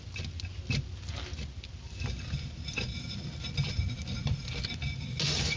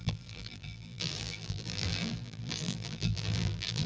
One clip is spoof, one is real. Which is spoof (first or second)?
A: second